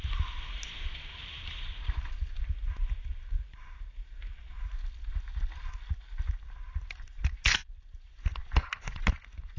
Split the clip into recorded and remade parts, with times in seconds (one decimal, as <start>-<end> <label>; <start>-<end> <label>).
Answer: 0.0-9.6 recorded